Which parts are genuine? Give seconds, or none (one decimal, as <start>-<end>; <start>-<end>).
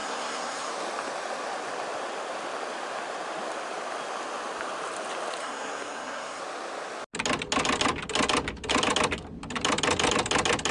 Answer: 0.7-5.4; 6.4-10.7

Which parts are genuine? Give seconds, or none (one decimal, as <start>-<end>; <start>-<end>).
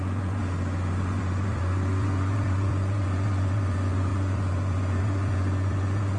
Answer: 0.4-1.0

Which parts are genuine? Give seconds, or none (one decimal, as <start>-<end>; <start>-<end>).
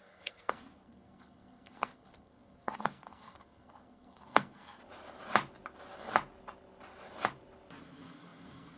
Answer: 4.8-7.8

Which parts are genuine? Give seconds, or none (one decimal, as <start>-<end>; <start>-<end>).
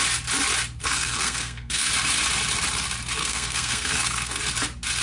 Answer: 0.0-0.8; 1.9-3.2; 4.4-5.0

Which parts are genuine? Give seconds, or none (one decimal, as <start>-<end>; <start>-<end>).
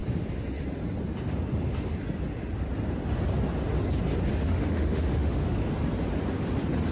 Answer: 0.0-4.3; 5.7-6.9